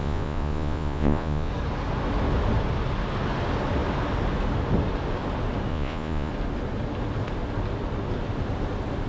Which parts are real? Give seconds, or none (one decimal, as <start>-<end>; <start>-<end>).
1.5-5.7; 6.3-9.1